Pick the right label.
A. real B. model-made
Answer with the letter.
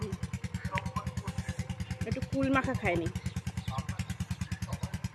A